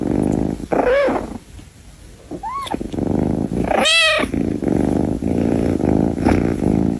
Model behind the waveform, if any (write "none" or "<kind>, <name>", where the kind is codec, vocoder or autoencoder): none